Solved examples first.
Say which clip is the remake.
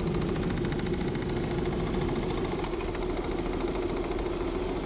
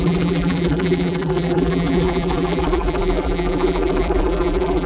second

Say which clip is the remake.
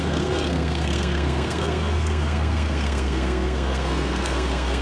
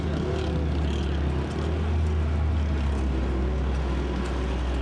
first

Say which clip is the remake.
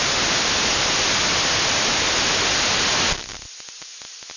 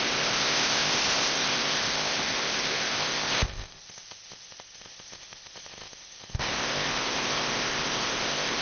second